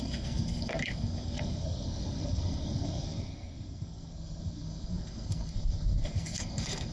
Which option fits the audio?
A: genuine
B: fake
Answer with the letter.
B